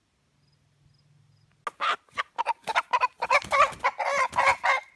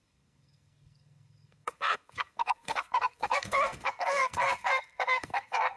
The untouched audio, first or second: first